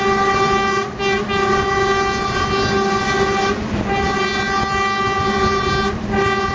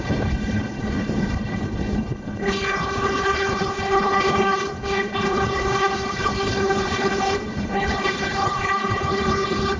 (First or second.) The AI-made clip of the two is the second